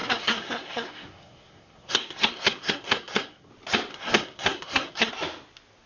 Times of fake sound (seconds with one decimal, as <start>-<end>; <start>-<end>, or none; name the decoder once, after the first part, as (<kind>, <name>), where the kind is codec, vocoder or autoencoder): 0.0-3.5 (codec, SNAC); 3.9-5.1